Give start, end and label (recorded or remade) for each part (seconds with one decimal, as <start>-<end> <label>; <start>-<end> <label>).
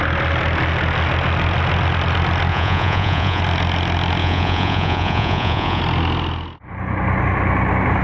0.0-2.5 recorded; 2.5-3.4 remade; 3.4-4.2 recorded; 4.2-5.8 remade; 5.8-8.0 recorded